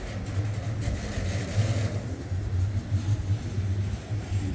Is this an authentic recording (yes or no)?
yes